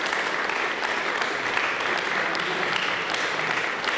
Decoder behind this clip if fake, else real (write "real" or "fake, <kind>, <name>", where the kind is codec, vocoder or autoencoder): real